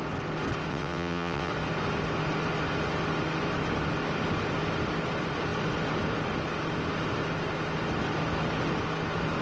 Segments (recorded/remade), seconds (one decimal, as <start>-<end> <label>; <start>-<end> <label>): 0.0-0.7 recorded; 0.7-1.5 remade; 1.5-9.4 recorded